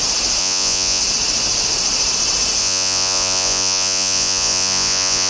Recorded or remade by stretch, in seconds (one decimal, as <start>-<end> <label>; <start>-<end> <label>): 0.0-0.4 recorded; 0.4-1.0 remade; 1.0-2.6 recorded; 2.6-5.3 remade